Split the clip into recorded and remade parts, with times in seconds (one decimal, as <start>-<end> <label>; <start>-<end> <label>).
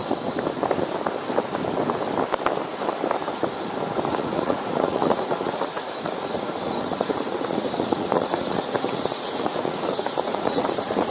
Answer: 0.0-4.1 recorded; 4.1-11.1 remade